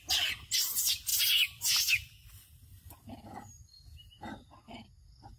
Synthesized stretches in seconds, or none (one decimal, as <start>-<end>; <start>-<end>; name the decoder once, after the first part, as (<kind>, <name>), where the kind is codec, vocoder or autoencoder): none